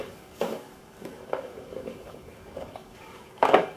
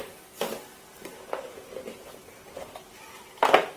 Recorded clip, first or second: second